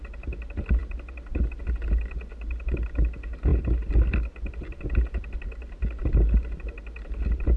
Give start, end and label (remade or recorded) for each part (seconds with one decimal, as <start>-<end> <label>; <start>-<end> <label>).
0.0-7.6 recorded

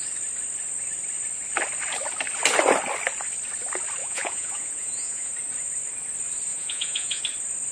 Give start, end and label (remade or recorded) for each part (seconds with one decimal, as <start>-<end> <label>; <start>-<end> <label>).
0.0-4.0 recorded; 4.0-5.3 remade; 5.3-6.5 recorded; 6.5-7.2 remade; 7.2-7.7 recorded

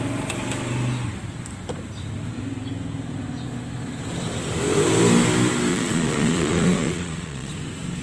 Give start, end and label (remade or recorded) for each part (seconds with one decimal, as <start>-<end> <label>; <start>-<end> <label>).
0.0-5.7 recorded; 5.7-7.5 remade; 7.5-8.0 recorded